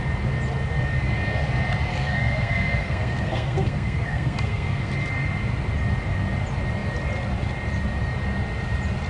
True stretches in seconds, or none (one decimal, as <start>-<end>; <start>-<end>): 0.0-1.9; 4.9-9.1